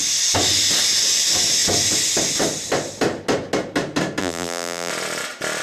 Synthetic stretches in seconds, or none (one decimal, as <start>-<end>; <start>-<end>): 4.2-4.9